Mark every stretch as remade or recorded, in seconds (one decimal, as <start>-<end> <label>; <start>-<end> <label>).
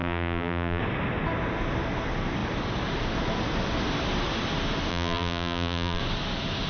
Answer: 0.0-0.8 remade; 0.8-4.9 recorded; 4.9-6.0 remade; 6.0-6.7 recorded